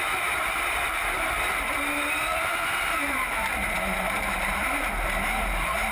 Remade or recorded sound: remade